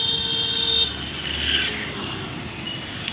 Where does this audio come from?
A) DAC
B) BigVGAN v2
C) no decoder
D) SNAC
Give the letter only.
C